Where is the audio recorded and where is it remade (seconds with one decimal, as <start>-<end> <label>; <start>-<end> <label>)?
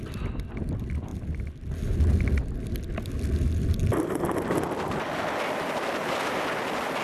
0.0-7.0 recorded